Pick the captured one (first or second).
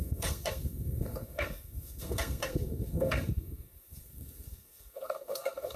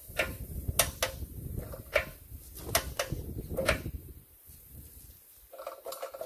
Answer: second